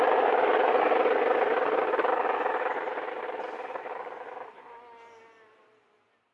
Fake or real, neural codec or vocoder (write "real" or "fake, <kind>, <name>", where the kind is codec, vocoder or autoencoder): real